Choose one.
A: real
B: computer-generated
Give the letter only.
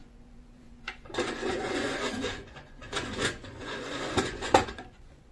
B